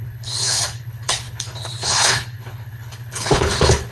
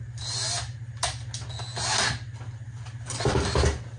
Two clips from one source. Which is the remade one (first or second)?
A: first